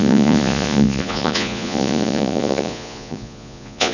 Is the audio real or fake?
fake